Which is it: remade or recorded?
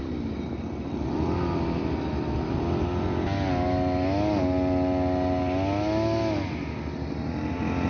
recorded